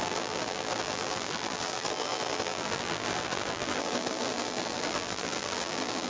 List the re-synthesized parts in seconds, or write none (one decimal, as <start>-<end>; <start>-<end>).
0.0-6.1